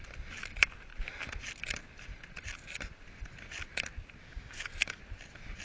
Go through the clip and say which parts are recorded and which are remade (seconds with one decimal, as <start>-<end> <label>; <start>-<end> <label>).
0.0-4.2 recorded; 4.2-5.0 remade; 5.0-5.6 recorded

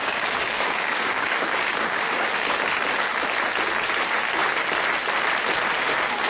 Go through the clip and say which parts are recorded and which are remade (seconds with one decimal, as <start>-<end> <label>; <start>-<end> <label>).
0.0-2.3 remade; 2.3-6.3 recorded